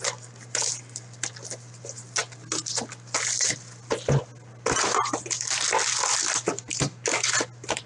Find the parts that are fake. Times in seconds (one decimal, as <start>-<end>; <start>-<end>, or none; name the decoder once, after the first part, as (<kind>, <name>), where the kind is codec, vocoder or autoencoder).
none